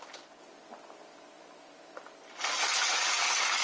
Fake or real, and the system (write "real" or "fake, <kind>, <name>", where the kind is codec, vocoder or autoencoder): real